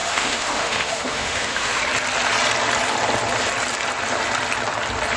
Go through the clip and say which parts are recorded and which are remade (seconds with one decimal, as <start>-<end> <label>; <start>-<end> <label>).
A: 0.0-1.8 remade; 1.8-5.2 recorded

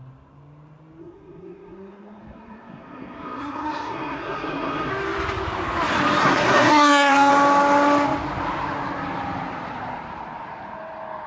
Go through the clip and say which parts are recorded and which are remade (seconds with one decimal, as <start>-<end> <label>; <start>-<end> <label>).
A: 0.0-1.0 recorded; 1.0-4.9 remade; 4.9-6.2 recorded; 6.2-7.3 remade; 7.3-11.3 recorded

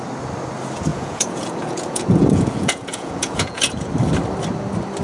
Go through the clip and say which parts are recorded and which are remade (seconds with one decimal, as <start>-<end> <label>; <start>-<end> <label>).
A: 0.0-0.9 recorded; 0.9-3.9 remade; 3.9-5.0 recorded